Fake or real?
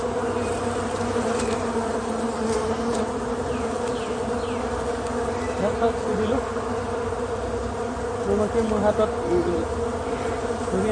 real